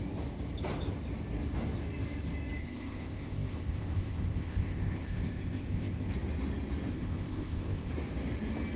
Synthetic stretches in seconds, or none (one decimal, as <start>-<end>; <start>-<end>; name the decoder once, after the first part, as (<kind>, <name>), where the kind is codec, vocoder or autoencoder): 2.6-6.1 (codec, ZipCodec); 6.9-7.9